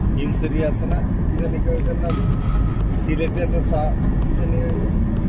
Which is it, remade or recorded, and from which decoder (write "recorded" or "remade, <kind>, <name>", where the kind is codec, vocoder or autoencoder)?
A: recorded